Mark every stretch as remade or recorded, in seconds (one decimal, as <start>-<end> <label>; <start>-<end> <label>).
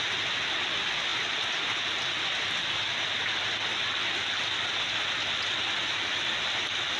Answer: 0.0-7.0 recorded